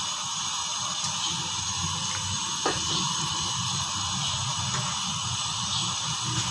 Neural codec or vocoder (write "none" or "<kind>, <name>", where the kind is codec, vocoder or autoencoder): none